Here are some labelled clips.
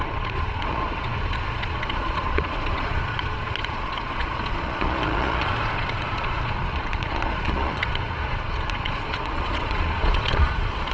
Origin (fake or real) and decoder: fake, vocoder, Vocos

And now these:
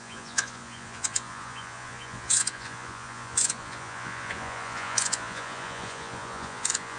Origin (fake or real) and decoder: fake, vocoder, Vocos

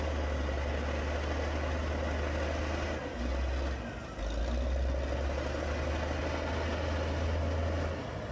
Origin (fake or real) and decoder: real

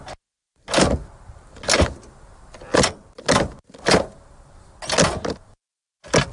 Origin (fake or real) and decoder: real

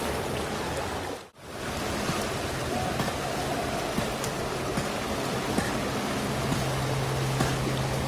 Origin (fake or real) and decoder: real